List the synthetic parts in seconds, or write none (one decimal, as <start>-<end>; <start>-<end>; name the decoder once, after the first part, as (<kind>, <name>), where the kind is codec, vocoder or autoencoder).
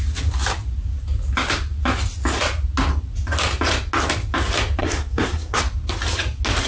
4.8-5.6 (codec, SNAC)